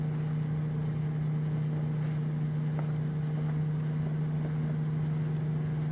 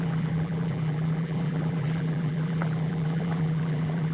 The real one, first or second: first